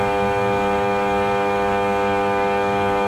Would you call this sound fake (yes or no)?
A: yes